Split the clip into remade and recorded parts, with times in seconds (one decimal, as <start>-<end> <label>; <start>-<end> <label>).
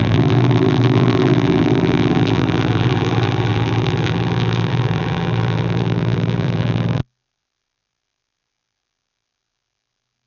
0.0-10.3 remade